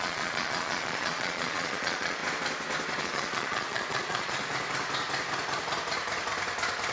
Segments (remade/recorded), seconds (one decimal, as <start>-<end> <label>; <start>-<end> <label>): 0.0-2.2 remade; 2.2-3.0 recorded; 3.0-4.4 remade; 4.4-6.9 recorded